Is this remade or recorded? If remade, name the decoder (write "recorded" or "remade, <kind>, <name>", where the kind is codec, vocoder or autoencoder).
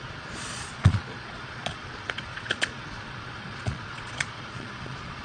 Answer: remade, vocoder, Vocos